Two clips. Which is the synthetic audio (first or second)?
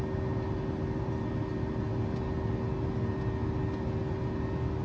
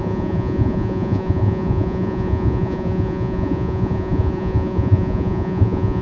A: second